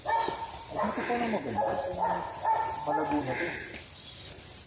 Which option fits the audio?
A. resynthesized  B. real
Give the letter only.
B